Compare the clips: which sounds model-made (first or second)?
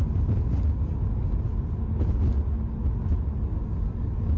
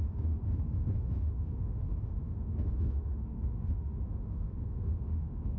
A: second